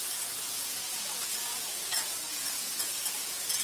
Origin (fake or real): fake